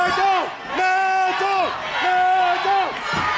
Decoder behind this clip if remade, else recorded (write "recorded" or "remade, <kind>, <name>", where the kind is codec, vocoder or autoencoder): recorded